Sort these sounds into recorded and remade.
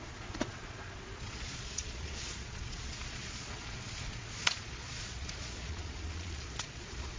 remade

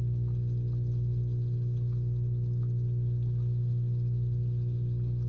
recorded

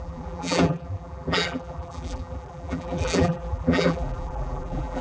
remade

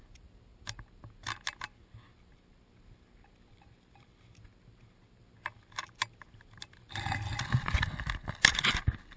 recorded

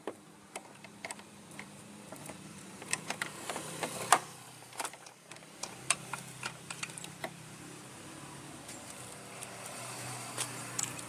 remade